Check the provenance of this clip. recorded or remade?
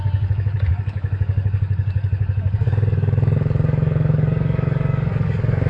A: remade